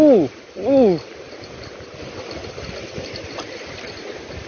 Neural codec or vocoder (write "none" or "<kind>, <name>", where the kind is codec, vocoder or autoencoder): none